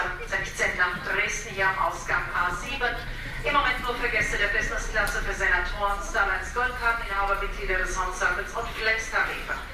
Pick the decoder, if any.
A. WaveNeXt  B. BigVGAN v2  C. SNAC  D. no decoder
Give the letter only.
B